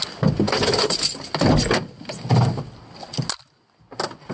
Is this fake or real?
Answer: real